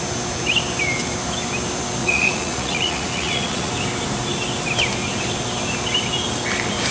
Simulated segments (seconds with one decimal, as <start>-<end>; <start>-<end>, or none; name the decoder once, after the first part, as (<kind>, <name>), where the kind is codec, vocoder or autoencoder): 2.0-3.7 (vocoder, Vocos)